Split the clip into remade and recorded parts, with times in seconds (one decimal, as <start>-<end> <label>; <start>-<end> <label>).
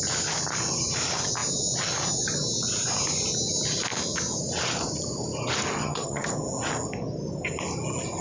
0.0-5.8 recorded; 5.8-6.3 remade; 6.3-8.2 recorded